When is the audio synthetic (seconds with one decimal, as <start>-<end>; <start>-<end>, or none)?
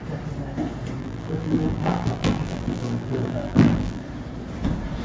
1.0-4.0